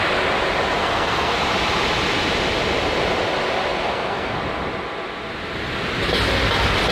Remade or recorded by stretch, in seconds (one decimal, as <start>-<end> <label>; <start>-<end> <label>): 0.0-0.8 recorded; 0.8-1.4 remade; 1.4-3.7 recorded; 3.7-4.3 remade; 4.3-6.9 recorded